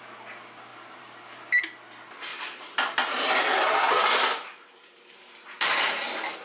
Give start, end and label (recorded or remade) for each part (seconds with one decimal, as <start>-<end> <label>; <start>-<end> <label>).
0.0-0.7 recorded; 0.7-1.2 remade; 1.2-2.3 recorded; 2.3-5.7 remade; 5.7-6.4 recorded